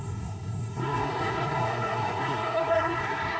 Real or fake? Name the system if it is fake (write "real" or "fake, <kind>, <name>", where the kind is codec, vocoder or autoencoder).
fake, codec, SNAC